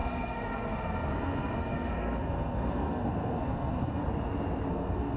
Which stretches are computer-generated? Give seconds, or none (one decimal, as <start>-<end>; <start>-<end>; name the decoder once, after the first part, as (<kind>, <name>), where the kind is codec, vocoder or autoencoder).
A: 0.0-4.0 (codec, SNAC); 4.7-5.2